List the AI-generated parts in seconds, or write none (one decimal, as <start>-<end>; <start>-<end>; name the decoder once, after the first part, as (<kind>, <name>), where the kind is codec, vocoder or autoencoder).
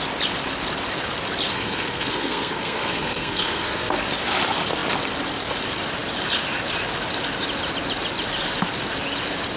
1.5-3.9 (codec, SNAC)